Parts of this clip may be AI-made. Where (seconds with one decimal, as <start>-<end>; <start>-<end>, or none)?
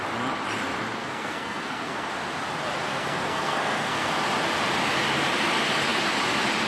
1.0-2.1; 2.9-4.1